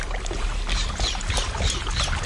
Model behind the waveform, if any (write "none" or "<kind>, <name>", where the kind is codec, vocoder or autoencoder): vocoder, BigVGAN v2